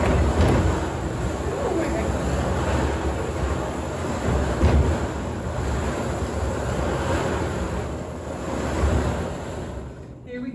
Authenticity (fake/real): real